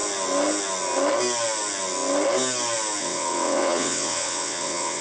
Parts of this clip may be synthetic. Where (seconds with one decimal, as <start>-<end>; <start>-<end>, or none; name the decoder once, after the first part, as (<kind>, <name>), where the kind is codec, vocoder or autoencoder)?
3.0-5.0 (vocoder, WaveNeXt)